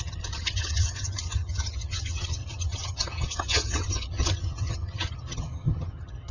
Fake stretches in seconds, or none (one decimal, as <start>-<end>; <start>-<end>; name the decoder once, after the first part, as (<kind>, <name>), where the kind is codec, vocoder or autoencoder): 0.0-6.3 (vocoder, HiFi-GAN)